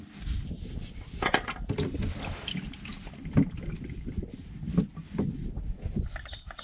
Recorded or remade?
recorded